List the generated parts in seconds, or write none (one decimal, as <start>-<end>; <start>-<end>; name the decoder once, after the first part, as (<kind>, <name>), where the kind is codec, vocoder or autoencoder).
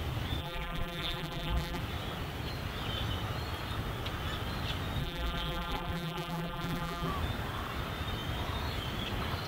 0.4-1.8 (vocoder, BigVGAN v2); 5.0-7.1